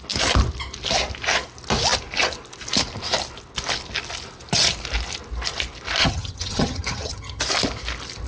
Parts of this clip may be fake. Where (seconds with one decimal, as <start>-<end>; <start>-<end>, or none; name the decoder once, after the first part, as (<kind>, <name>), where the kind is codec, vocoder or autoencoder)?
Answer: 6.0-7.4 (vocoder, HiFi-GAN)